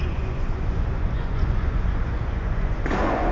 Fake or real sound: fake